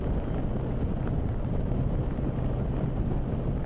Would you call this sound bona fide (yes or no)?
yes